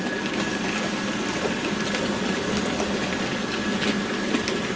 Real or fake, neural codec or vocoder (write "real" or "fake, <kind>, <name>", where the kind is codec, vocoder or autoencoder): real